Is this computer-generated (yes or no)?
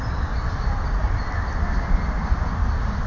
no